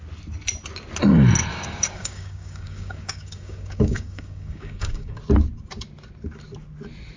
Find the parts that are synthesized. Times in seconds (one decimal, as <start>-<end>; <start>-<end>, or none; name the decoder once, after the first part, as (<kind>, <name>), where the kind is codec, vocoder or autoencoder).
1.5-5.2 (codec, DAC)